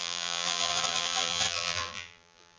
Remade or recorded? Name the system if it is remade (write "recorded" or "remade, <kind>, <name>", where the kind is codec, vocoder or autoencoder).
remade, vocoder, BigVGAN v2